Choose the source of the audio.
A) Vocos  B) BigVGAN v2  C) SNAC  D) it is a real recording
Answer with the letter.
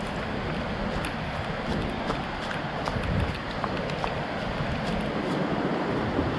D